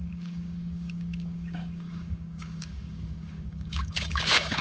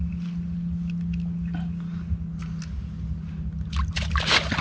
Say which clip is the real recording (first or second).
second